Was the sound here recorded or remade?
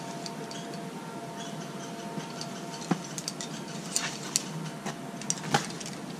recorded